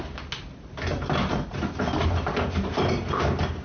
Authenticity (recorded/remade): recorded